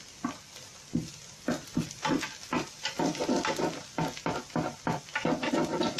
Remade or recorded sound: recorded